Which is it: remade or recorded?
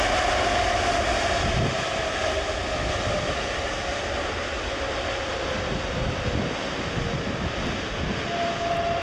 recorded